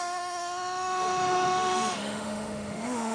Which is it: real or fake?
fake